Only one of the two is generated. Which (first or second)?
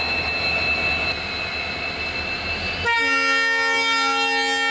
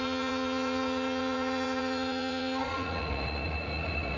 second